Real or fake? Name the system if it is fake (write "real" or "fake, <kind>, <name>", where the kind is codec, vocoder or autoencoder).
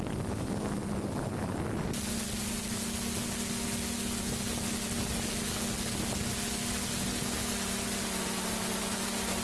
real